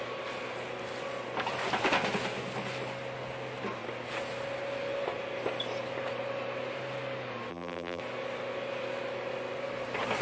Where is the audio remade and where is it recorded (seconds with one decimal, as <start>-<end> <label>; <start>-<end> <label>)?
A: 0.0-7.5 recorded; 7.5-8.0 remade; 8.0-10.2 recorded